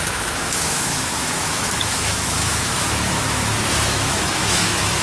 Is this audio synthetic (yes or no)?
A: yes